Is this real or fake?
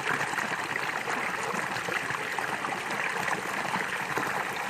real